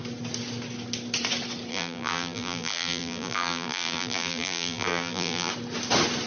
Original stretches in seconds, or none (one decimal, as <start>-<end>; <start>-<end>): 0.0-1.7; 5.5-6.3